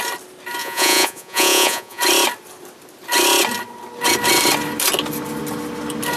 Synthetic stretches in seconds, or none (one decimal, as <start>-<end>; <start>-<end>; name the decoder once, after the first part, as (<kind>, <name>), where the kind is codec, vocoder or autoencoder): 0.6-2.0 (vocoder, Vocos)